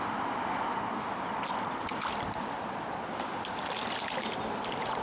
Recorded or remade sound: recorded